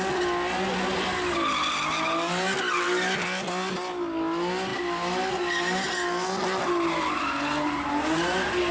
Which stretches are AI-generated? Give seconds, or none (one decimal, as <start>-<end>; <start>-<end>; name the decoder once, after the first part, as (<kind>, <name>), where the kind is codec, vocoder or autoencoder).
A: none